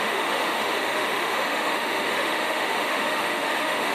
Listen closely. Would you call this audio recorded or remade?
remade